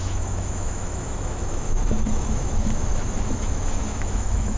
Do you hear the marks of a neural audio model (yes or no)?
yes